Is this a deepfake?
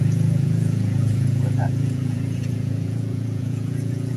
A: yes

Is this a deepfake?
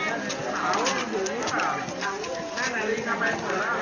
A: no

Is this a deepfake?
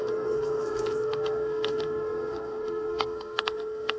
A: yes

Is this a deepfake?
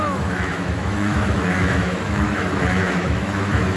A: yes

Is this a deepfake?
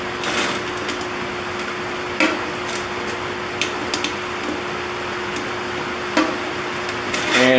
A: no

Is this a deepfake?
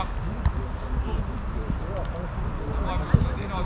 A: no